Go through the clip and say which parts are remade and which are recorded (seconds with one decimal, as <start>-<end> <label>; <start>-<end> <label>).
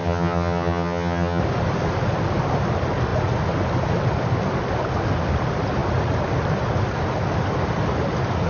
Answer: 0.0-1.4 remade; 1.4-8.5 recorded